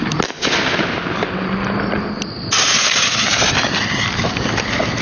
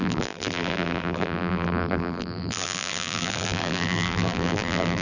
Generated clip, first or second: second